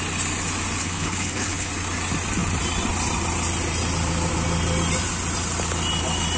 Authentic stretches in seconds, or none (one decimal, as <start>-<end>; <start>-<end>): 0.0-0.8; 1.7-6.4